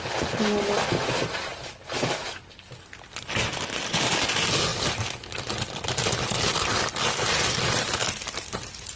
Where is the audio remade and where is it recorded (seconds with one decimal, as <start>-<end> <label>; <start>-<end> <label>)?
0.0-9.0 recorded